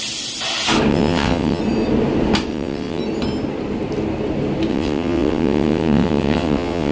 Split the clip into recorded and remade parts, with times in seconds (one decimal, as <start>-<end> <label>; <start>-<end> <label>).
0.0-0.9 recorded; 0.9-1.6 remade; 1.6-2.5 recorded; 2.5-3.0 remade; 3.0-4.7 recorded; 4.7-6.9 remade